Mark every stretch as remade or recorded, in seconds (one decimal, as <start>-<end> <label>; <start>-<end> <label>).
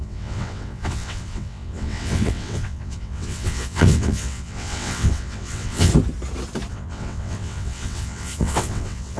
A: 0.0-5.9 remade; 5.9-6.7 recorded; 6.7-9.2 remade